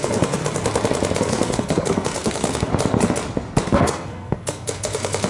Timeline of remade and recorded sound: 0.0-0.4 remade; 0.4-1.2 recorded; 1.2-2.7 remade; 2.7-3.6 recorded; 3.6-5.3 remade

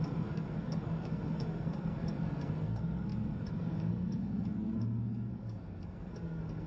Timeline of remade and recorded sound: 0.0-6.7 remade

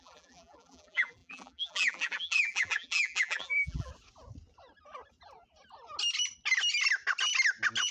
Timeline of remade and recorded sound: 0.0-3.9 remade; 3.9-7.9 recorded

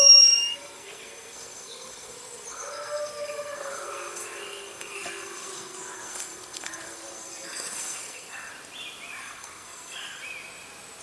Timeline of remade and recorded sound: 0.0-8.5 remade; 8.5-9.2 recorded; 9.2-10.2 remade; 10.2-11.0 recorded